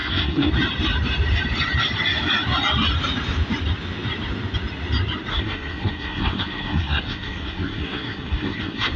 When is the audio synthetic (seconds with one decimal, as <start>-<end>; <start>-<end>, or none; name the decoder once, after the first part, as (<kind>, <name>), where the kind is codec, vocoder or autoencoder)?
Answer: 0.0-0.5 (codec, SNAC); 5.3-9.0